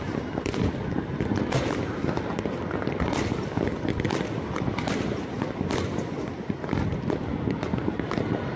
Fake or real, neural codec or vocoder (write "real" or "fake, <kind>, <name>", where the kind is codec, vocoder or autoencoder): fake, vocoder, BigVGAN v2